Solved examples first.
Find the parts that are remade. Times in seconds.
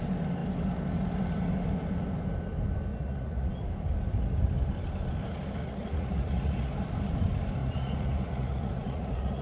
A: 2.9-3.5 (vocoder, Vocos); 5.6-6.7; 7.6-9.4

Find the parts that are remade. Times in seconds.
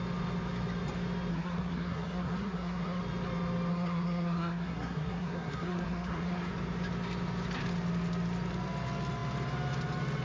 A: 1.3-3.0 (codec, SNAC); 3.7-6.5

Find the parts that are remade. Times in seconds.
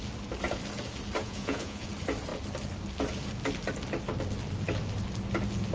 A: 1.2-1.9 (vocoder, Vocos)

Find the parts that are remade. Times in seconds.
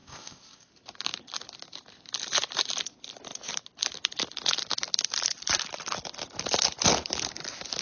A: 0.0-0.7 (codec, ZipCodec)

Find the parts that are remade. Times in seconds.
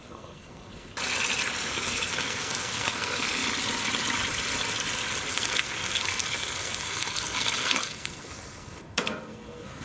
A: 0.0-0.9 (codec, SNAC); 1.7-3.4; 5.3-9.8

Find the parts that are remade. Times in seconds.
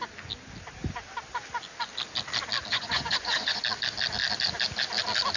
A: 2.7-3.6 (vocoder, Vocos)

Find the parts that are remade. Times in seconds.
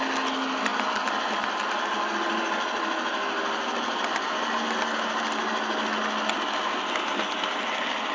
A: none